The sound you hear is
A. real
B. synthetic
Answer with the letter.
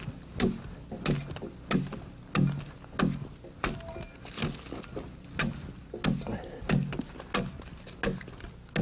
A